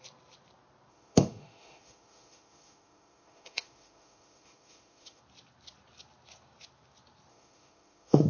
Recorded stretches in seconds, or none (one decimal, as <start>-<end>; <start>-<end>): 0.0-0.9; 5.2-7.3